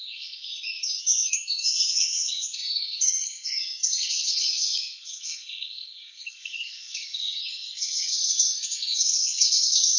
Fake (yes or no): yes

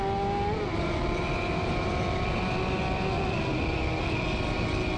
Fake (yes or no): no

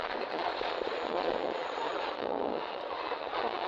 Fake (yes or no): yes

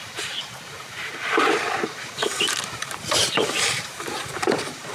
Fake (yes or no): yes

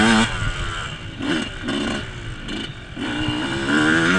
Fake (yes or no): no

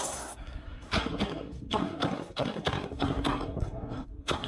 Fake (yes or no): yes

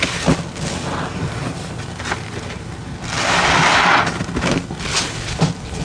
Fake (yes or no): no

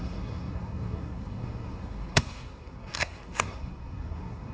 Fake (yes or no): yes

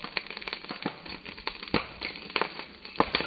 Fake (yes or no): yes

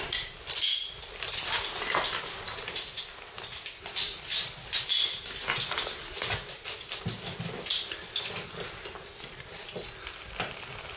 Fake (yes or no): no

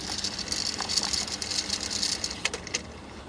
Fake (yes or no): no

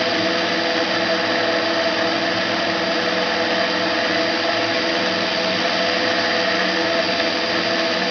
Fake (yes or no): no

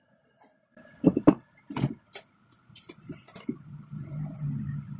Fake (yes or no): no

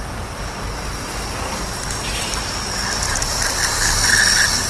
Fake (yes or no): no